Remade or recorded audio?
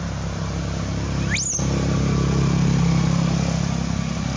recorded